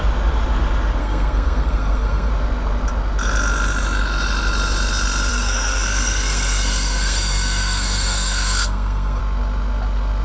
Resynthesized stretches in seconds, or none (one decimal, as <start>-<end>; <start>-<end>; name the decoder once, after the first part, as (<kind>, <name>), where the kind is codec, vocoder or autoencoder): 1.0-2.3 (codec, SNAC); 5.3-9.2